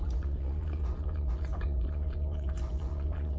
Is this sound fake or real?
fake